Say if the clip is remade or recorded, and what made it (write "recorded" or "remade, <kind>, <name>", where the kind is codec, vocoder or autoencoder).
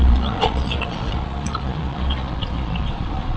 remade, vocoder, Vocos